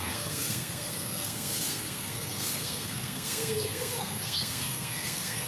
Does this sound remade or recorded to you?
remade